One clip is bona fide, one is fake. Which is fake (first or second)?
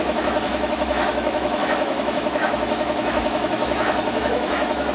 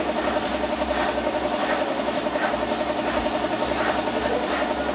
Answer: first